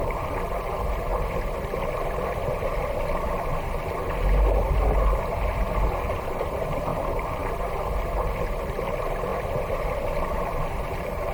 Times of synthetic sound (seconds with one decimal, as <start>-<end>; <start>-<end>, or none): 0.0-1.1; 4.0-9.3; 10.8-11.3